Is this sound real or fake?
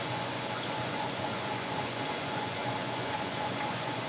fake